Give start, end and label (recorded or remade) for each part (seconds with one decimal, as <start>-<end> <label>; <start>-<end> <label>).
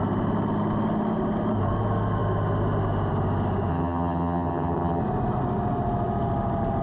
0.0-3.7 recorded; 3.7-5.0 remade; 5.0-6.8 recorded